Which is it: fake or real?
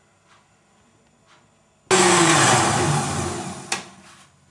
real